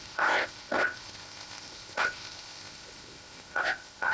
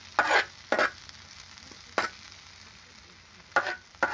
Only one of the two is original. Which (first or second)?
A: second